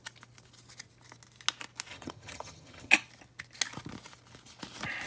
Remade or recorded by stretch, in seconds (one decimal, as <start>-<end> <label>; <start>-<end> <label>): 0.0-1.9 recorded; 1.9-2.9 remade; 2.9-5.1 recorded